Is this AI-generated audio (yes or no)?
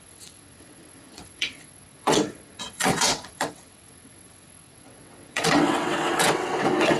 yes